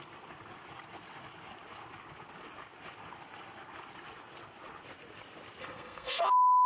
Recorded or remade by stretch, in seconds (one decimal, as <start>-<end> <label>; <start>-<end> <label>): 0.0-5.6 recorded; 5.6-6.2 remade; 6.2-6.7 recorded